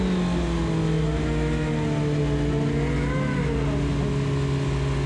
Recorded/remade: recorded